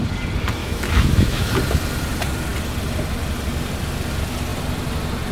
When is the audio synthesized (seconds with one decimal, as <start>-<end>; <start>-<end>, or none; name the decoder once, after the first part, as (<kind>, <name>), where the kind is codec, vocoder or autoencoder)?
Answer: 0.6-1.5 (autoencoder, DAC-VAE)